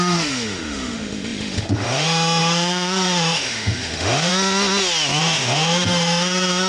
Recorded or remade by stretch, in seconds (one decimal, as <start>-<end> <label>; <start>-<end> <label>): 0.0-4.3 remade; 4.3-5.2 recorded; 5.2-6.7 remade